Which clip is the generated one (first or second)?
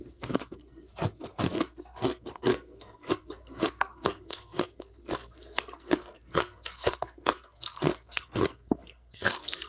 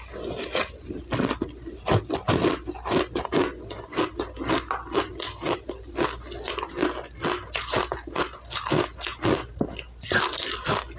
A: first